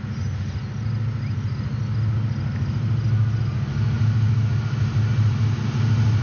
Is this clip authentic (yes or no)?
yes